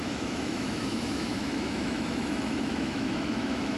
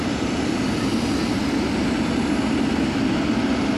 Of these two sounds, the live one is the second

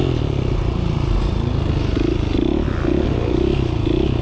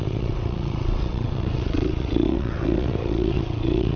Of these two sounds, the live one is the first